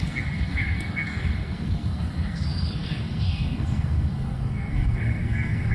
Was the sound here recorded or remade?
remade